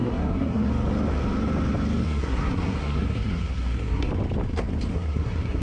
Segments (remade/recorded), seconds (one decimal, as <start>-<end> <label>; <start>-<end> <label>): 0.0-0.7 remade; 0.7-2.0 recorded; 2.0-4.1 remade; 4.1-4.9 recorded; 4.9-5.6 remade